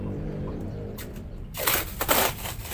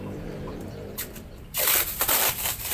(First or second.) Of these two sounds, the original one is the first